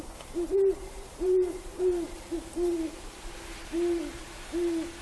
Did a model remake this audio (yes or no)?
yes